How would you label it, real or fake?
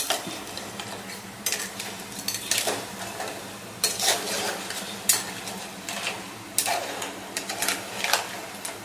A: real